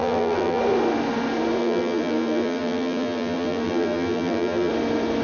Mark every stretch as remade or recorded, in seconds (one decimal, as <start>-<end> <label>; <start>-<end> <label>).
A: 0.0-0.6 remade; 0.6-1.6 recorded; 1.6-4.7 remade; 4.7-5.2 recorded